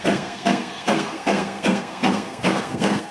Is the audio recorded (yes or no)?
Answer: no